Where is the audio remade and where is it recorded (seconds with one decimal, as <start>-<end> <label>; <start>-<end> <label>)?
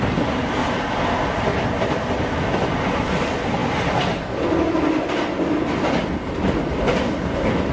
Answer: 0.0-7.7 recorded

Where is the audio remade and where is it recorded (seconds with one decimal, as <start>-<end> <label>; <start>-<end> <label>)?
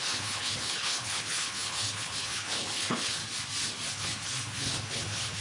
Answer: 0.0-3.2 remade; 3.2-3.9 recorded; 3.9-5.4 remade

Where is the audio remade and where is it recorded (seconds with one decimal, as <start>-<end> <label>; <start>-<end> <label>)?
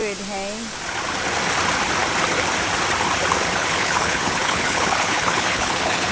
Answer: 0.0-3.6 recorded; 3.6-6.1 remade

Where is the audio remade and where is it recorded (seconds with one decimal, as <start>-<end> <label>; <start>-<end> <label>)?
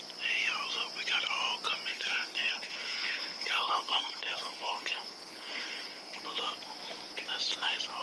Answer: 0.0-1.9 recorded; 1.9-6.2 remade; 6.2-8.0 recorded